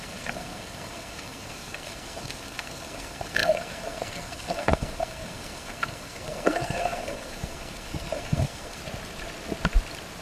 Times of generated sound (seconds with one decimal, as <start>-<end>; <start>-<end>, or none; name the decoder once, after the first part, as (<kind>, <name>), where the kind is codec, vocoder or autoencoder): 0.0-8.8 (codec, SNAC)